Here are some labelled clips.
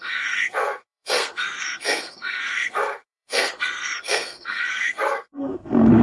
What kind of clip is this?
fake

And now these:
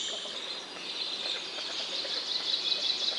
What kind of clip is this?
real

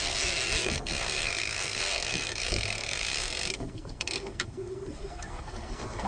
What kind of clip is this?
fake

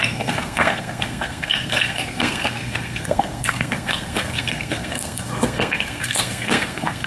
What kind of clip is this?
fake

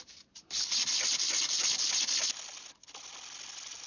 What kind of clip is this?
real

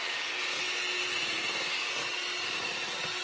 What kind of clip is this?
real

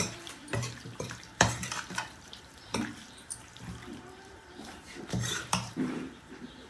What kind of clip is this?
fake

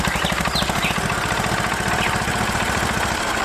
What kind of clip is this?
real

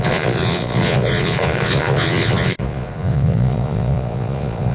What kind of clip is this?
fake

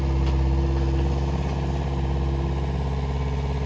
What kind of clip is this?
real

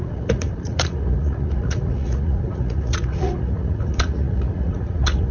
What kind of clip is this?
fake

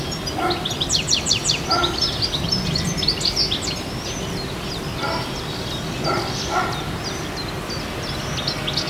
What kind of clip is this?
real